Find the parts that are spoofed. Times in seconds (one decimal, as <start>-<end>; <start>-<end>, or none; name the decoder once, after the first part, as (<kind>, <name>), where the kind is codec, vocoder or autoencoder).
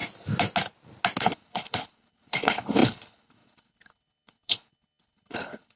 1.2-5.8 (codec, HILCodec)